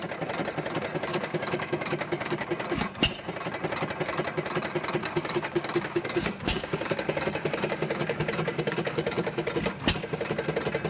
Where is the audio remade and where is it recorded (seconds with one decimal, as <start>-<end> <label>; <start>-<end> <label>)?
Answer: 0.0-1.1 recorded; 1.1-2.5 remade; 2.5-5.0 recorded; 5.0-9.5 remade; 9.5-10.9 recorded